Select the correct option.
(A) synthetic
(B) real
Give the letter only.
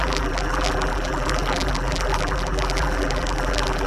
A